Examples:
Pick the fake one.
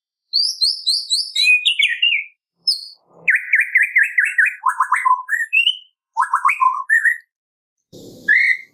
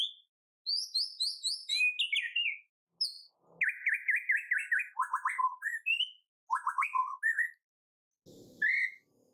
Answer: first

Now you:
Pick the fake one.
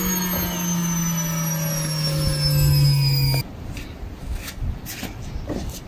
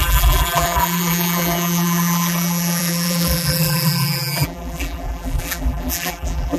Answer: second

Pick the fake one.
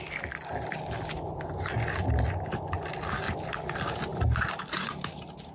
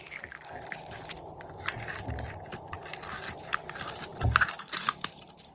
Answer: second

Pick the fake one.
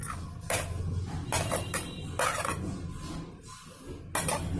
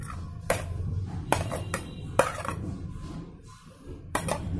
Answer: second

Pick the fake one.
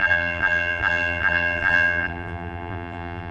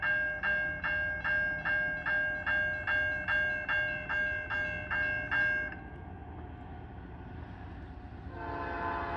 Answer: first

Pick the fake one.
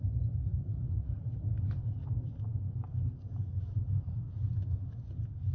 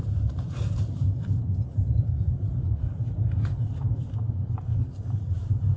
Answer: second